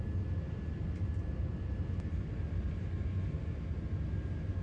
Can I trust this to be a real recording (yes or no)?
yes